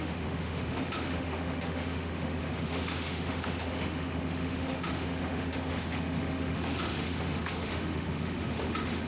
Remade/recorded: remade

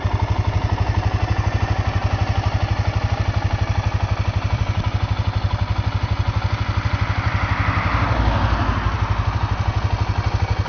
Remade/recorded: recorded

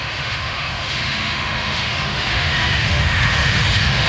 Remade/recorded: remade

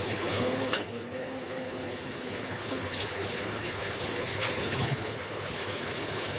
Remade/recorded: remade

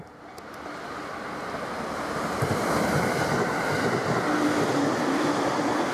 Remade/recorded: recorded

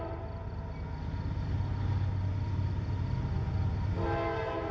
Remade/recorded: recorded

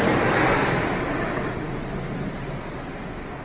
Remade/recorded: recorded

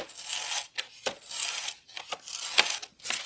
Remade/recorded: recorded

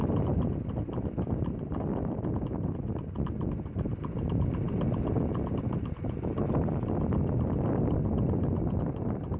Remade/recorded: recorded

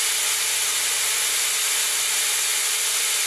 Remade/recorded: recorded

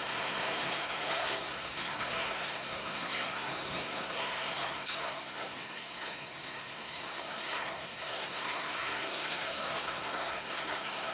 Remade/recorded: remade